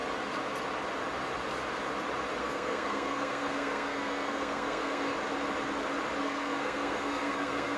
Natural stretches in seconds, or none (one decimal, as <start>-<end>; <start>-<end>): 0.0-2.4; 5.1-6.2